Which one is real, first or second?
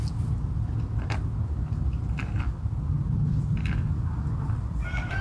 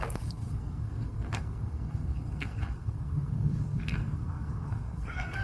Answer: first